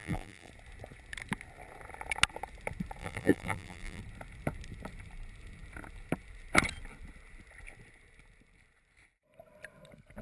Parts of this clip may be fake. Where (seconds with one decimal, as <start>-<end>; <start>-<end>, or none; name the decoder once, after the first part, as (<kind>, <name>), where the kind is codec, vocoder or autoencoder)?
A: 0.0-0.5 (vocoder, BigVGAN v2); 3.0-4.0